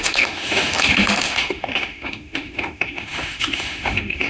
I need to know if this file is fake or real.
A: fake